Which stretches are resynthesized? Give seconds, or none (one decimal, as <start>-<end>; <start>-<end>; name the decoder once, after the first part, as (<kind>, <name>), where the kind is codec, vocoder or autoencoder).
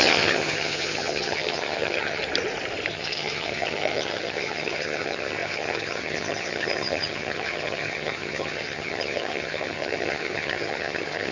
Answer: 0.0-2.2 (vocoder, HiFi-GAN); 2.9-11.3